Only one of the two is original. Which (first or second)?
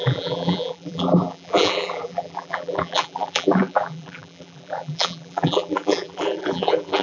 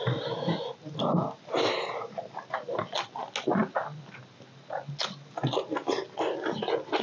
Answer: second